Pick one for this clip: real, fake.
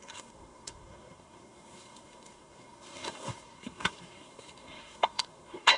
fake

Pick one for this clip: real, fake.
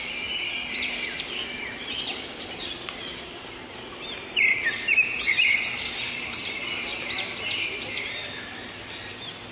fake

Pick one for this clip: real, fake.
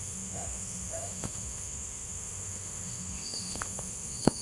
fake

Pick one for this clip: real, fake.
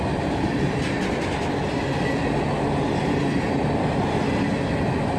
real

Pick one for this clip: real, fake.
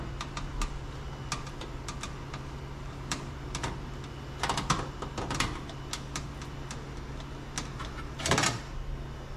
real